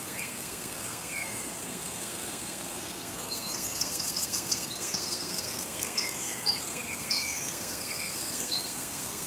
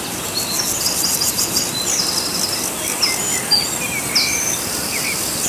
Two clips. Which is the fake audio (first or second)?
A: first